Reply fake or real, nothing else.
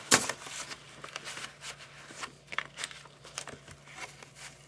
real